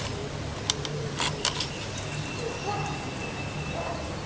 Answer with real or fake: real